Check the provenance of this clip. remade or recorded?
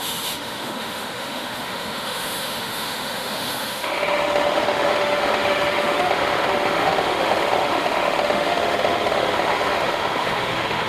remade